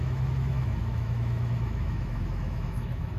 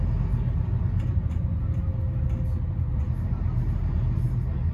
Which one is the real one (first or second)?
second